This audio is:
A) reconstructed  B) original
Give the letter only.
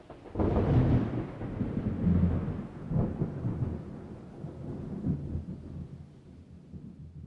B